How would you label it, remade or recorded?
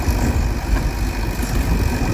recorded